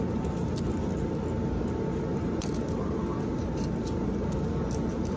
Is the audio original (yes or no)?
yes